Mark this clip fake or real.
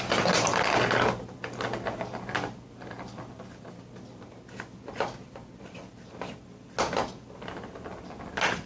real